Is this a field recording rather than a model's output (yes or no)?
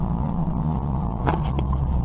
no